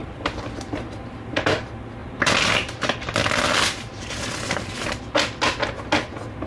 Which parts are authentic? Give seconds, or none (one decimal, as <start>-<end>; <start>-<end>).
1.6-2.0; 4.1-6.5